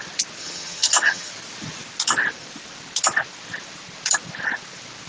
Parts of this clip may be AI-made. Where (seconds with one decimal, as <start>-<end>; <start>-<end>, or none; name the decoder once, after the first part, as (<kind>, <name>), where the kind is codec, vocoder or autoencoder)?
0.4-1.3 (vocoder, HiFi-GAN)